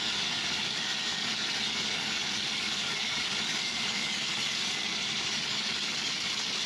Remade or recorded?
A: remade